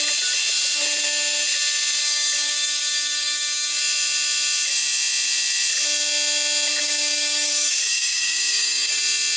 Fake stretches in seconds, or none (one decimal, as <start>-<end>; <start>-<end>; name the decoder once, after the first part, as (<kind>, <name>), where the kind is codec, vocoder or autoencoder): 2.0-3.8 (codec, DAC); 6.8-9.0